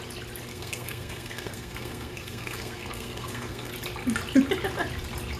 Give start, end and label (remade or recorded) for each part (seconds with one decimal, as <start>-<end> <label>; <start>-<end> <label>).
0.0-0.5 recorded; 0.5-3.7 remade; 3.7-5.4 recorded